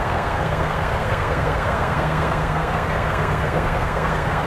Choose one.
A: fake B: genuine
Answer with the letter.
A